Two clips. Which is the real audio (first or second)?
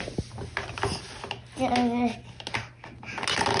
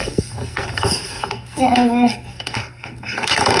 first